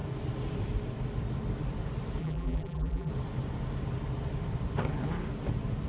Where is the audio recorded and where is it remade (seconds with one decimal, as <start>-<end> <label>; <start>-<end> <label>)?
0.0-2.2 recorded; 2.2-3.1 remade; 3.1-5.9 recorded